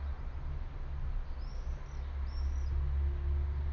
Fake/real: real